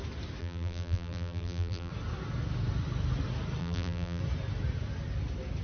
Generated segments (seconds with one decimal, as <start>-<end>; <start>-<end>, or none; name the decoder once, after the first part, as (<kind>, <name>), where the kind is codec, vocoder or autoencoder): 0.4-1.9 (vocoder, BigVGAN v2); 3.6-4.2